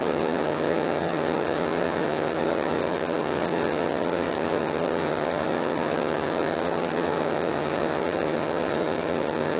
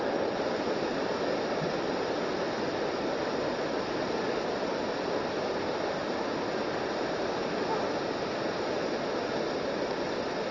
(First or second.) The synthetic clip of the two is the first